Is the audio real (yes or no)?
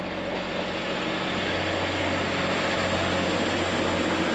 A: yes